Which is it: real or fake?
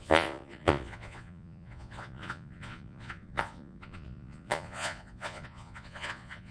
fake